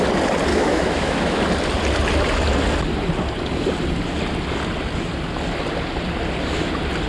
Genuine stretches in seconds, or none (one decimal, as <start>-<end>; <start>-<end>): 0.0-0.5; 1.4-7.1

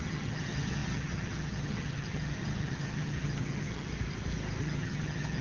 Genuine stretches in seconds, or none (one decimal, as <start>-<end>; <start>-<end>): 3.9-4.6

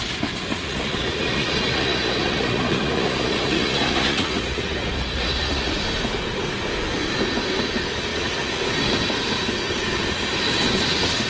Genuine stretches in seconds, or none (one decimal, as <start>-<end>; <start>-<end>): 0.0-0.5; 5.7-8.1; 8.6-11.3

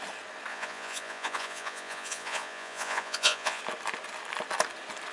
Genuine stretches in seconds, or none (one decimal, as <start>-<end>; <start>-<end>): 0.0-0.5; 3.6-5.1